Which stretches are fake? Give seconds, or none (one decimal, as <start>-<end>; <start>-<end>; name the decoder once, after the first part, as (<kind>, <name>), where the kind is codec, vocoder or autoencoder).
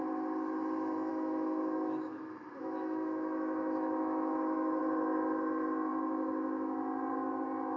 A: 1.1-4.8 (autoencoder, DAC-VAE)